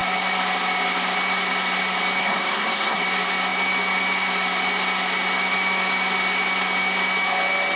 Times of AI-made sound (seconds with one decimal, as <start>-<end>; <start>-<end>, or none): 2.2-3.0